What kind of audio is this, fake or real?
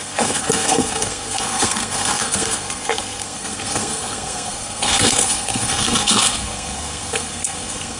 fake